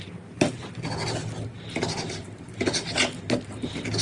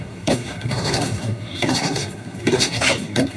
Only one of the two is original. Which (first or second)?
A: first